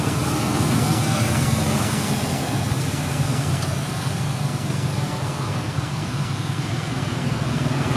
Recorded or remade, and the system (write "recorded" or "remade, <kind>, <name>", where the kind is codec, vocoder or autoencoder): remade, codec, SNAC